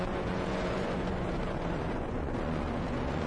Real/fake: fake